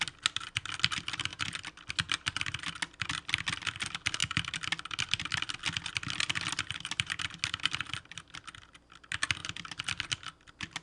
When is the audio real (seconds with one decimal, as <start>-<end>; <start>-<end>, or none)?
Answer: 0.0-10.8